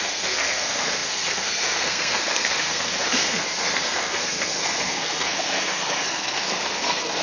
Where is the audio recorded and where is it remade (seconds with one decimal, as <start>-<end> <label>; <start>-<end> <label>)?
0.0-7.2 remade